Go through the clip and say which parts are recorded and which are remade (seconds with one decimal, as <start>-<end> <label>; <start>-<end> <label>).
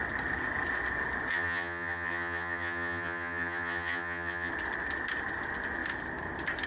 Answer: 0.0-1.3 recorded; 1.3-4.5 remade; 4.5-6.7 recorded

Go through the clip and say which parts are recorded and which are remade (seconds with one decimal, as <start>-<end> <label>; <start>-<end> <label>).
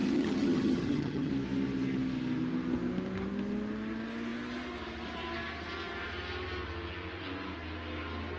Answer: 0.0-1.3 remade; 1.3-8.4 recorded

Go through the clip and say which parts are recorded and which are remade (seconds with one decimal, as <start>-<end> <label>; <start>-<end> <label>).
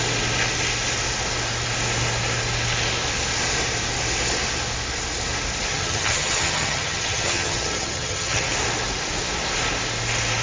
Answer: 0.0-5.7 recorded; 5.7-8.5 remade; 8.5-10.4 recorded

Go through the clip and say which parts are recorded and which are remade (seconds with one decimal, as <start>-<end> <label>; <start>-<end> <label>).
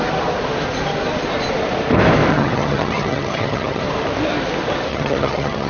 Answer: 0.0-2.3 recorded; 2.3-3.8 remade; 3.8-4.9 recorded; 4.9-5.7 remade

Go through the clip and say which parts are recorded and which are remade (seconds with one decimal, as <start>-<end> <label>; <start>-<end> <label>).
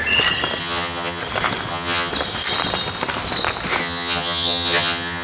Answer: 0.0-0.6 recorded; 0.6-1.2 remade; 1.2-1.7 recorded; 1.7-2.1 remade; 2.1-3.8 recorded; 3.8-5.2 remade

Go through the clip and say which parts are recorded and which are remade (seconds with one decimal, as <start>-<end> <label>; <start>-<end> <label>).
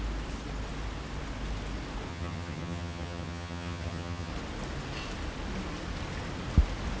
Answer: 0.0-2.1 recorded; 2.1-4.3 remade; 4.3-7.0 recorded